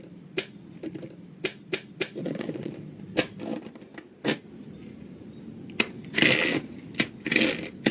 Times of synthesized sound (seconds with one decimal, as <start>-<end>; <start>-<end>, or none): 2.2-2.7